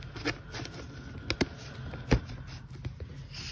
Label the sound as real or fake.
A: real